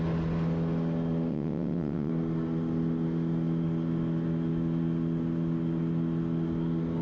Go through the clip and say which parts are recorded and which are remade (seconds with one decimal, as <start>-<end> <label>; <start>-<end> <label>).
0.0-1.3 recorded; 1.3-2.1 remade; 2.1-7.0 recorded